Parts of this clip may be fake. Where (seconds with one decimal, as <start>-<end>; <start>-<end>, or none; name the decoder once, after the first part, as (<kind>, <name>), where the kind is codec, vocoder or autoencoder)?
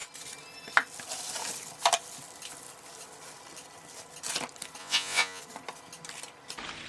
4.8-5.4 (vocoder, Vocos)